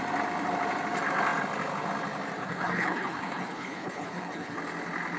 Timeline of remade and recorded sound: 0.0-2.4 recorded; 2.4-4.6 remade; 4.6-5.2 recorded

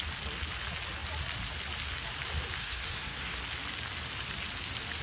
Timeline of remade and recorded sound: 0.0-2.6 recorded; 2.6-3.4 remade; 3.4-5.0 recorded

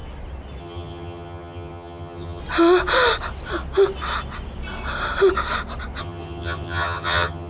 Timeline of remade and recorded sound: 0.0-0.6 recorded; 0.6-2.4 remade; 2.4-6.0 recorded; 6.0-7.5 remade

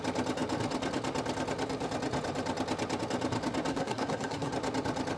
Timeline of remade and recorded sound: 0.0-3.7 recorded; 3.7-4.5 remade; 4.5-5.2 recorded

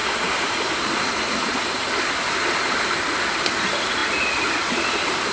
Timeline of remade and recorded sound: 0.0-5.3 recorded

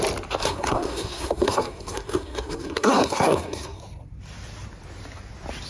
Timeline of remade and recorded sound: 0.0-0.4 recorded; 0.4-3.8 remade; 3.8-5.7 recorded

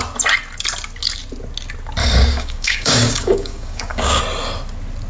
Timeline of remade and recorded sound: 0.0-2.0 recorded; 2.0-4.2 remade; 4.2-5.1 recorded

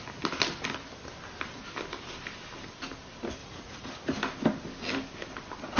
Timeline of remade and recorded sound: 0.0-3.4 recorded; 3.4-3.9 remade; 3.9-5.8 recorded